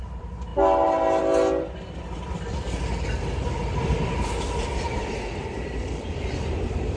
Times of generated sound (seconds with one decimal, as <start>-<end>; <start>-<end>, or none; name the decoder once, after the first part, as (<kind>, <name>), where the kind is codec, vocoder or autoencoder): none